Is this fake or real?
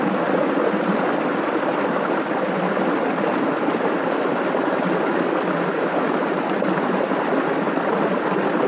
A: real